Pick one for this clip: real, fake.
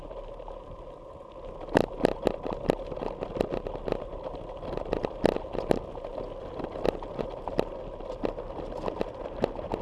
real